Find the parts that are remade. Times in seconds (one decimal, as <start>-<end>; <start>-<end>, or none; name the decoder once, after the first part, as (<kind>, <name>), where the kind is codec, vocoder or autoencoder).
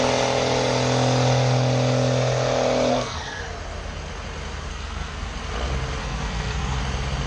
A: 2.9-3.4 (codec, SNAC); 4.7-5.3; 6.0-6.8